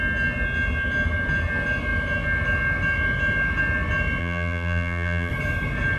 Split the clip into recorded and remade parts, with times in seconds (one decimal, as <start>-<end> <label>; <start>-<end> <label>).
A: 0.0-4.2 recorded; 4.2-5.3 remade; 5.3-6.0 recorded